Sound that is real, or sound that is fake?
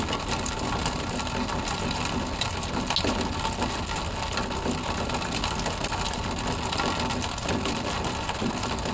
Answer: real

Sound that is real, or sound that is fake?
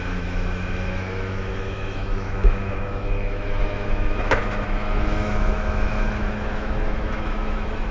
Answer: fake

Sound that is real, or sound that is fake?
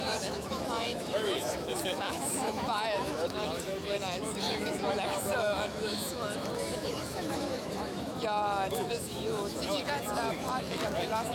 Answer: fake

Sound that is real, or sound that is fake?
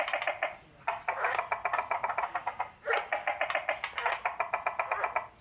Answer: real